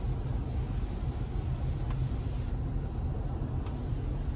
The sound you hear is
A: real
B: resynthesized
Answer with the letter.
A